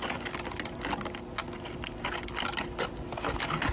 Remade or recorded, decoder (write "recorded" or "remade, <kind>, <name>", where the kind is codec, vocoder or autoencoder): recorded